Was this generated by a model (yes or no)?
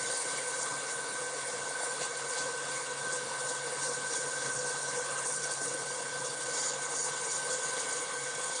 yes